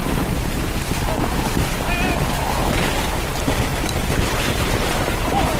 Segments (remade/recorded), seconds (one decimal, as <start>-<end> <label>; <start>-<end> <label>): 0.0-3.7 recorded; 3.7-5.6 remade